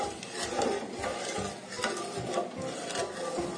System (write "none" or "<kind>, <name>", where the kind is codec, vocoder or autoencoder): none